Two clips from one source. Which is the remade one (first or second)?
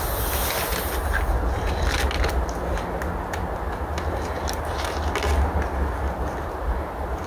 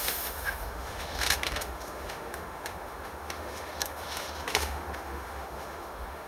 second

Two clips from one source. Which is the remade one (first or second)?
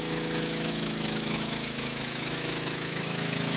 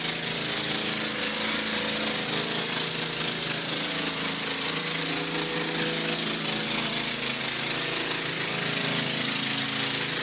first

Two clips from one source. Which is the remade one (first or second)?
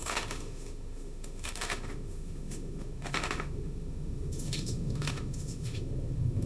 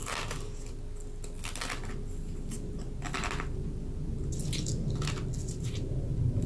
first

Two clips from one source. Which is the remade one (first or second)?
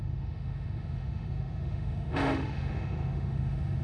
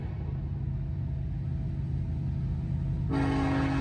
first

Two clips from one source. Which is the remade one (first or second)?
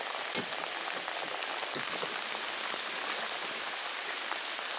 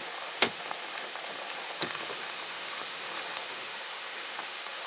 second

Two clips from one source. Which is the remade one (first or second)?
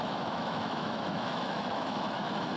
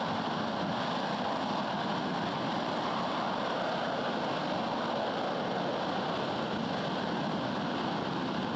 first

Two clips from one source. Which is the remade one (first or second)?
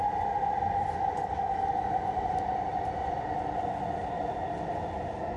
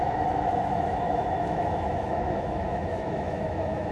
second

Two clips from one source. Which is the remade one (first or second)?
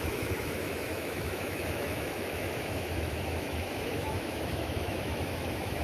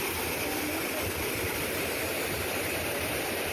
first